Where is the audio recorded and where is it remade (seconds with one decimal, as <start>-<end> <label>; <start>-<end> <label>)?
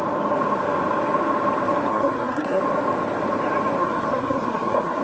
0.0-1.9 recorded; 1.9-2.6 remade; 2.6-3.8 recorded; 3.8-5.0 remade